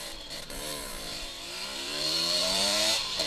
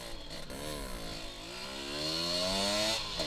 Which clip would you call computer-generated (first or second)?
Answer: first